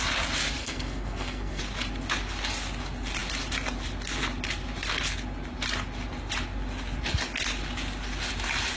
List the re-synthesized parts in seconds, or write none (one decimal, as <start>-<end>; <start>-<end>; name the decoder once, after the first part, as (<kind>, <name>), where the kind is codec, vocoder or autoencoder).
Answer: 0.6-1.6 (codec, SNAC)